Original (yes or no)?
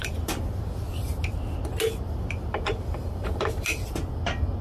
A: yes